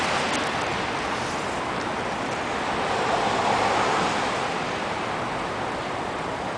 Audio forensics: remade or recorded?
recorded